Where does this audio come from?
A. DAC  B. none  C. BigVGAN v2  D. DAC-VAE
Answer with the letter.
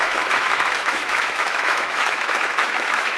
D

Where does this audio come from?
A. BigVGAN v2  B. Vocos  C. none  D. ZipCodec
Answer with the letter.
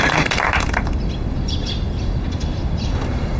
C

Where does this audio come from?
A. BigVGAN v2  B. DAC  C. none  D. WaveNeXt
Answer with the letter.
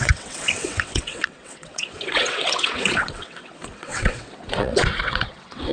D